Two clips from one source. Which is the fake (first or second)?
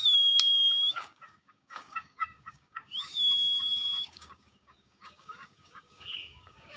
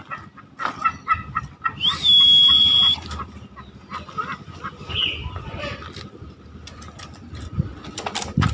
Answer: first